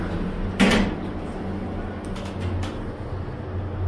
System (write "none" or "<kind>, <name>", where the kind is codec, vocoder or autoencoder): none